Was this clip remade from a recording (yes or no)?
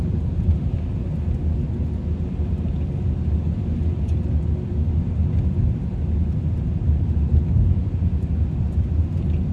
no